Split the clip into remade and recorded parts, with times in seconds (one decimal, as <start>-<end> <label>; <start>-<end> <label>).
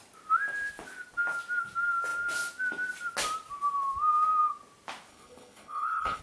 0.0-5.1 recorded; 5.1-6.2 remade